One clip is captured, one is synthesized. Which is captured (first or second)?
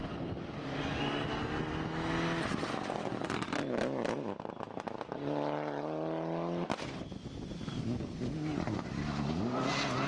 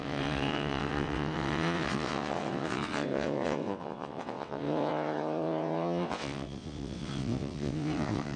first